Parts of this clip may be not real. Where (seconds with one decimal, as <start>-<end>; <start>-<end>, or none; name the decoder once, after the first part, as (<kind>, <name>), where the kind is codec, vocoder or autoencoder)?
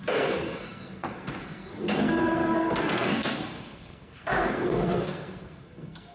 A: 0.0-6.1 (codec, SNAC)